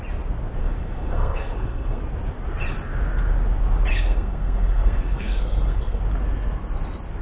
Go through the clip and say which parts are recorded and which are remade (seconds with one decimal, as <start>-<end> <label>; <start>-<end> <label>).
0.0-0.6 recorded; 0.6-2.0 remade; 2.0-3.9 recorded; 3.9-6.0 remade; 6.0-7.2 recorded